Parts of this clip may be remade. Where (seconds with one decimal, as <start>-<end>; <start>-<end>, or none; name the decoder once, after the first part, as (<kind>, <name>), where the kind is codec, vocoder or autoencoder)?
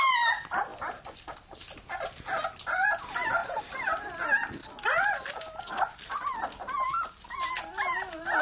3.4-4.0 (vocoder, BigVGAN v2)